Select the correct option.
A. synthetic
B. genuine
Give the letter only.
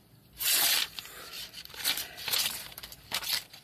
A